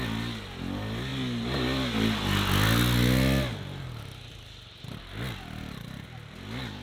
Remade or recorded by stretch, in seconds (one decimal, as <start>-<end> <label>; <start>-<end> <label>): 0.0-6.8 recorded